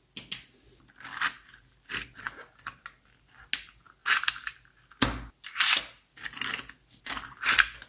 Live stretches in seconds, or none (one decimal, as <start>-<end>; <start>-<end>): 0.0-7.9